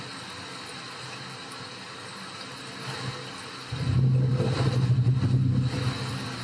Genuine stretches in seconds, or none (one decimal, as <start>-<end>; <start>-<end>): 0.0-6.4